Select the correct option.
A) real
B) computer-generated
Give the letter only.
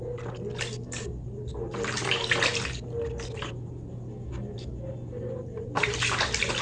A